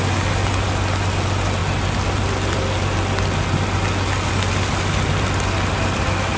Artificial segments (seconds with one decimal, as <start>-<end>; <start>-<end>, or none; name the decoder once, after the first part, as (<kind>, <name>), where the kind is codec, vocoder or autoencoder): none